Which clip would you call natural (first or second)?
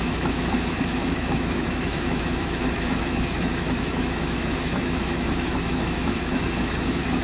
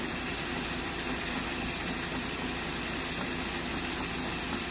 second